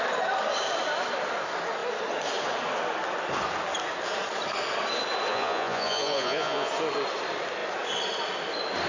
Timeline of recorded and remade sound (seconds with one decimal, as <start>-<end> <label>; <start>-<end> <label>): 0.0-5.3 recorded; 5.3-6.7 remade; 6.7-8.9 recorded

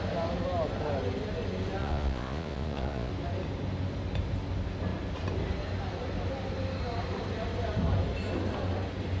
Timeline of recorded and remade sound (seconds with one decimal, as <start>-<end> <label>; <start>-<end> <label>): 0.0-1.8 recorded; 1.8-3.1 remade; 3.1-9.2 recorded

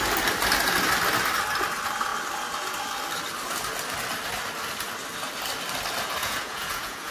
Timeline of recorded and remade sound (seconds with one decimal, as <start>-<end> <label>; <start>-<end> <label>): 0.0-6.2 recorded; 6.2-7.1 remade

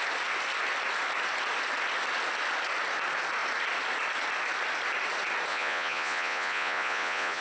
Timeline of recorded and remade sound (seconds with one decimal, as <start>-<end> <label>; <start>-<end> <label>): 0.0-5.5 recorded; 5.5-7.4 remade

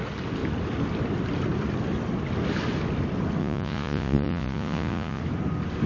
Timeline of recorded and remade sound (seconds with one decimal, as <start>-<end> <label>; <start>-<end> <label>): 0.0-3.4 recorded; 3.4-5.2 remade; 5.2-5.9 recorded

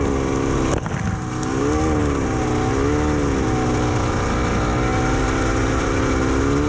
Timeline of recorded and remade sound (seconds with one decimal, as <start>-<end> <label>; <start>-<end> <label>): 0.0-6.7 recorded